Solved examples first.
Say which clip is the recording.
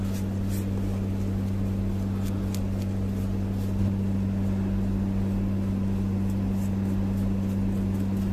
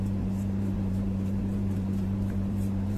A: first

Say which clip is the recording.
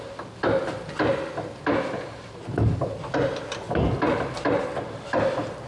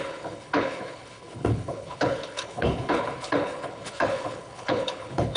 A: first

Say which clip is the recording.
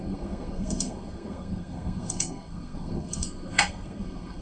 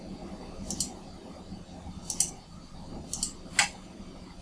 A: second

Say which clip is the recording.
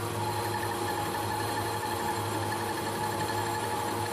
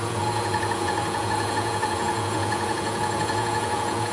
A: first